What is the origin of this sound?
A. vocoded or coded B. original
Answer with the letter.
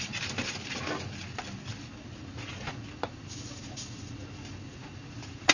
B